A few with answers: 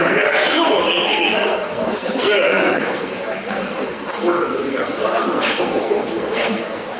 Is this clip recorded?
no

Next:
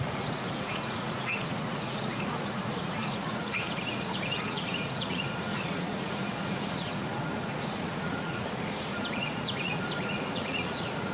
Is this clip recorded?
no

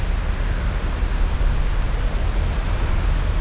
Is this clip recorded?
yes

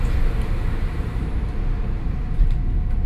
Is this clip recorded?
no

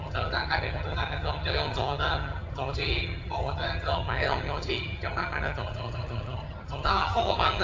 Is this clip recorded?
no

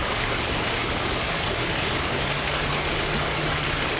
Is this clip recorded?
no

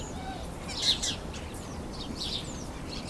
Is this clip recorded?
no